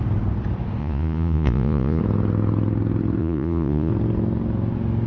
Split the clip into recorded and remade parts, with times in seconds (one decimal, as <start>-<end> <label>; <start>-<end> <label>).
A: 0.0-0.8 recorded; 0.8-2.0 remade; 2.0-3.2 recorded; 3.2-3.9 remade; 3.9-5.1 recorded